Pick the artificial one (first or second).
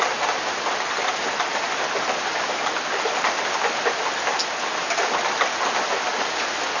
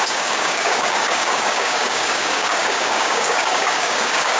second